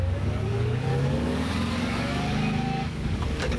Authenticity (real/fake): fake